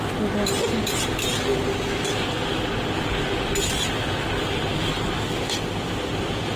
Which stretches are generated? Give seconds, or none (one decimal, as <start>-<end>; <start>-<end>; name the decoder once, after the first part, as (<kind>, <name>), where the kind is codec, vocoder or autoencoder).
none